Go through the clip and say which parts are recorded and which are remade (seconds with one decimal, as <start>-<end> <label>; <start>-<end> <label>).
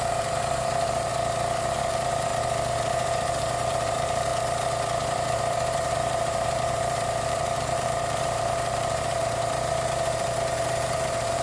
0.0-1.1 remade; 1.1-1.8 recorded; 1.8-2.3 remade; 2.3-2.9 recorded; 2.9-4.3 remade; 4.3-5.0 recorded; 5.0-11.4 remade